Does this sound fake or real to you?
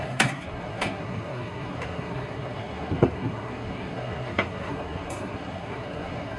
fake